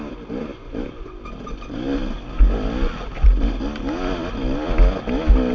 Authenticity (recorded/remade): recorded